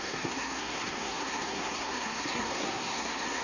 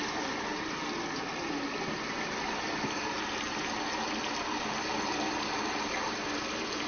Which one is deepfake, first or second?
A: first